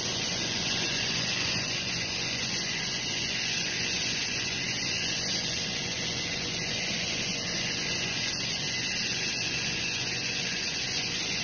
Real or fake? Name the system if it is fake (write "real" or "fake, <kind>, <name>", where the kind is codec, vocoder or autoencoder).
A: fake, vocoder, Vocos